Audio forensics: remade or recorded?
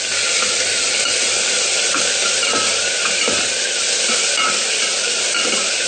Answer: recorded